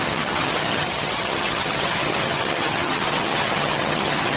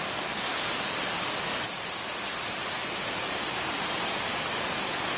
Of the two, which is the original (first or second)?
second